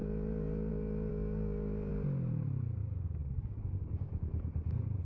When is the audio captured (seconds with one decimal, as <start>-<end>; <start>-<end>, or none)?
0.0-1.1; 1.9-2.8